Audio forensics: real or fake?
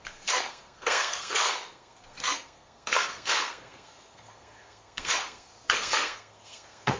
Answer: fake